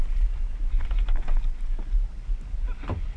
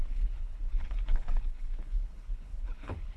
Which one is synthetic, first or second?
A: second